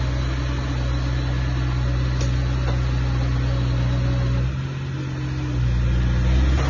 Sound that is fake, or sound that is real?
real